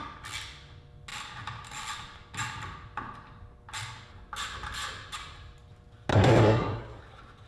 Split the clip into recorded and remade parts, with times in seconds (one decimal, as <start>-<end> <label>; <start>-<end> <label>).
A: 0.0-6.1 recorded; 6.1-7.0 remade; 7.0-7.5 recorded